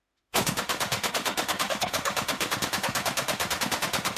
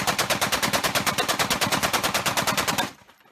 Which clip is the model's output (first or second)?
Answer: first